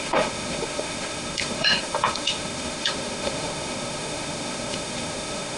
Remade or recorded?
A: remade